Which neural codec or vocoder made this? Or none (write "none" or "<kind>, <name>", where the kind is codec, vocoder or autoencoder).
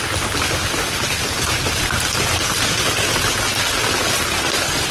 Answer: none